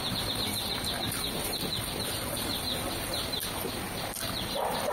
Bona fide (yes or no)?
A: yes